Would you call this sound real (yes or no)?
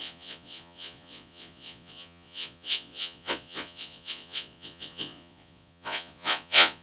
no